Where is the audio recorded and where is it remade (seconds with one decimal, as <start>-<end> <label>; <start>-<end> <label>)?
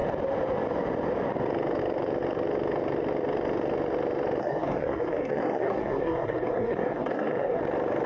0.0-4.4 recorded; 4.4-7.6 remade; 7.6-8.1 recorded